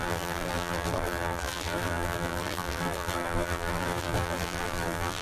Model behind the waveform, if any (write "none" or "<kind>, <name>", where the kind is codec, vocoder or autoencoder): vocoder, BigVGAN v2